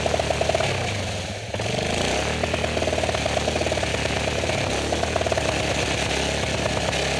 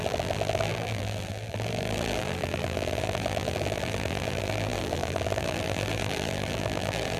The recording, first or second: first